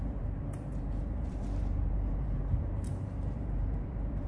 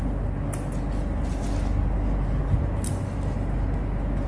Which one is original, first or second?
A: second